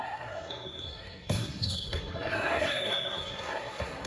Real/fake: fake